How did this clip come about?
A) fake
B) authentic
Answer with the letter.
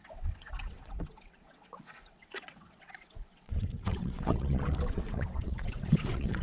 A